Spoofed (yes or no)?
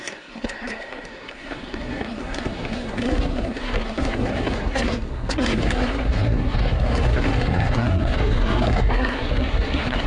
yes